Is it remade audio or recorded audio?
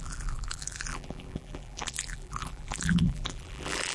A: remade